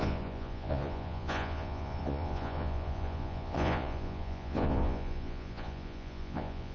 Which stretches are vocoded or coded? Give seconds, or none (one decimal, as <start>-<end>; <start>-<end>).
0.0-6.7